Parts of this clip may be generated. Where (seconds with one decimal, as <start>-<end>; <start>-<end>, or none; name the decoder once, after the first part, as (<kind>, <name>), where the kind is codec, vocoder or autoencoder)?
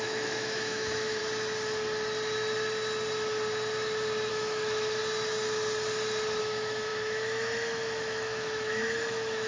0.0-1.2 (autoencoder, DAC-VAE); 4.3-5.0; 6.4-9.5